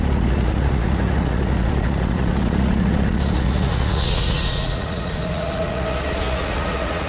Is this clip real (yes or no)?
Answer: no